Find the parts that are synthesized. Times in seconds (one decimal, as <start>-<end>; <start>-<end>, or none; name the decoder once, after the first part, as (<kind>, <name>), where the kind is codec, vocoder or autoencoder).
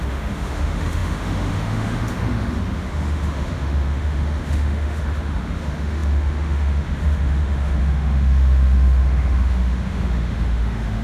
0.0-11.0 (autoencoder, DAC-VAE)